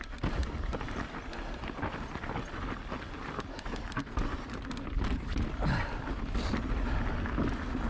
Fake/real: real